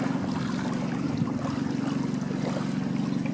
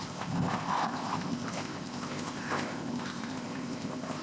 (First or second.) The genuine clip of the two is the first